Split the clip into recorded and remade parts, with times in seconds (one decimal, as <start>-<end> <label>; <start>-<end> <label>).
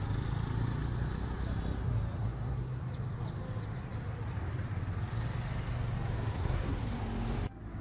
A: 0.0-2.2 recorded; 2.2-2.8 remade; 2.8-6.3 recorded; 6.3-7.0 remade; 7.0-7.8 recorded